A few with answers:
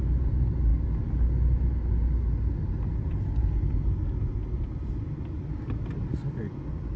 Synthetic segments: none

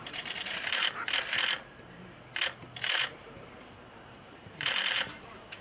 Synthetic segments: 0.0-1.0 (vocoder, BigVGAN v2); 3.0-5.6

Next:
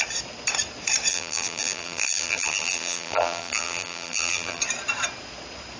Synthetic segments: 1.1-4.6 (vocoder, BigVGAN v2)

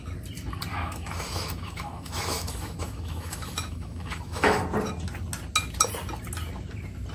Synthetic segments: 0.7-4.6 (autoencoder, DAC-VAE)